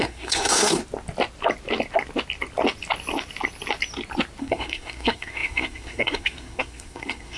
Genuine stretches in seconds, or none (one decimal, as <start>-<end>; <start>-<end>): 0.8-4.4